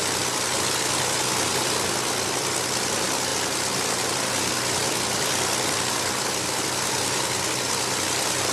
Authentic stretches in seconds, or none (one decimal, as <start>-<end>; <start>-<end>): 0.0-8.5